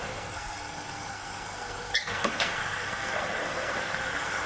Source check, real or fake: fake